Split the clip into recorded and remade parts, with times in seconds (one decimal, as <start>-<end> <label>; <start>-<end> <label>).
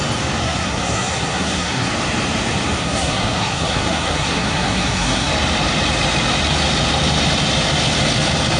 0.0-0.4 recorded; 0.4-1.9 remade; 1.9-2.8 recorded; 2.8-5.3 remade; 5.3-8.6 recorded